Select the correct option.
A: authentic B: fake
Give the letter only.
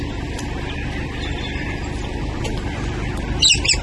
A